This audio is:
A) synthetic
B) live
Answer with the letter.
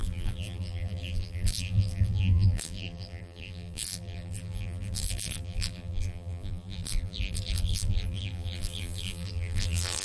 A